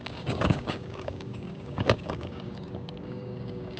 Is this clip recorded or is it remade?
remade